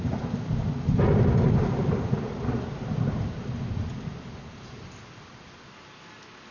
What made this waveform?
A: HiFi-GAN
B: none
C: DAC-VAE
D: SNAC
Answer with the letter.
B